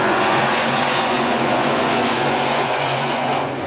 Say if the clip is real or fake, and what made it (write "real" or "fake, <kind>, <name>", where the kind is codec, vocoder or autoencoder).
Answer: fake, vocoder, Vocos